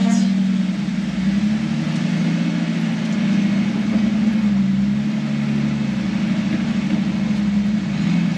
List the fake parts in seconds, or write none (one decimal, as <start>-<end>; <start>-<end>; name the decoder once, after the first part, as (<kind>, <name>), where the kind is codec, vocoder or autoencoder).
none